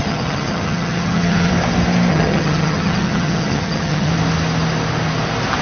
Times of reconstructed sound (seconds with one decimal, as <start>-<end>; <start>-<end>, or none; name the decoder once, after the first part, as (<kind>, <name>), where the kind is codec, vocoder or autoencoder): 0.0-1.5 (vocoder, HiFi-GAN); 2.1-4.1